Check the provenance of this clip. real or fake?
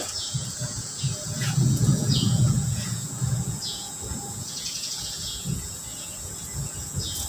fake